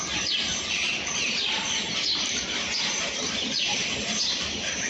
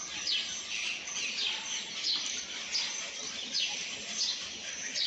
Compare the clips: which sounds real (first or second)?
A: second